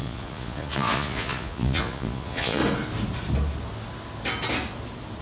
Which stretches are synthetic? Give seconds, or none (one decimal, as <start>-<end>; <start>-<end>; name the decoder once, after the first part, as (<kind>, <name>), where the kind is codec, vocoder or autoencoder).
0.0-2.6 (vocoder, Vocos)